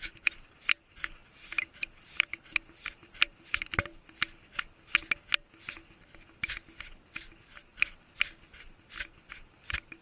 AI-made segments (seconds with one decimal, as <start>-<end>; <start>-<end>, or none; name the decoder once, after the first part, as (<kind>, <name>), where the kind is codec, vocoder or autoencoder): 1.2-4.2 (vocoder, BigVGAN v2)